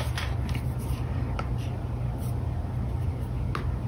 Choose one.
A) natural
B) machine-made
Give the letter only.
A